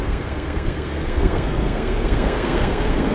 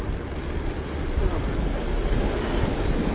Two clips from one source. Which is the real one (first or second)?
second